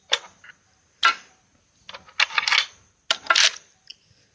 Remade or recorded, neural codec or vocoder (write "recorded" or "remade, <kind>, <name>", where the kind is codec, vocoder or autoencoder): recorded